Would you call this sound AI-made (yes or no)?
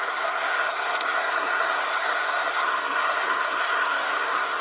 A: yes